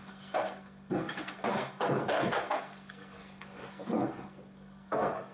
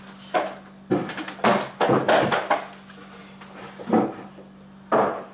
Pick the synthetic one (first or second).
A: first